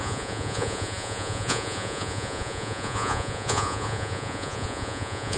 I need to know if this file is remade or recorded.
remade